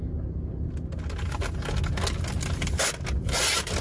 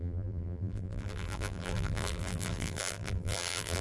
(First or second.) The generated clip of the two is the second